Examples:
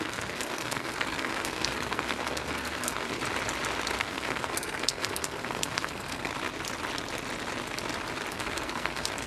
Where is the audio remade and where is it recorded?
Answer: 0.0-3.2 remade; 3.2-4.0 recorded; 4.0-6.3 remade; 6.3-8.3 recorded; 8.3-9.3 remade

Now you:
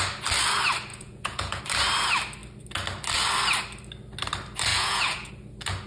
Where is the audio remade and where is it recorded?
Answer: 0.0-0.9 recorded; 0.9-1.6 remade; 1.6-4.7 recorded; 4.7-5.3 remade; 5.3-5.9 recorded